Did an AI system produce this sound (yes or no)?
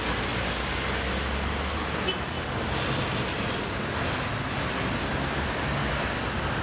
no